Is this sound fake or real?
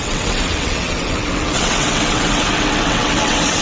fake